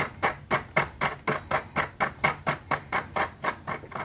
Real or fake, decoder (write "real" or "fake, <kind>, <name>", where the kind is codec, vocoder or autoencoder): real